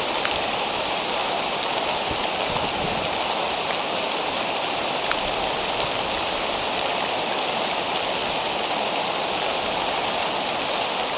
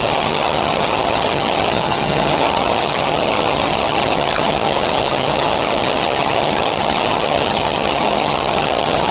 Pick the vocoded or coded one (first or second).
second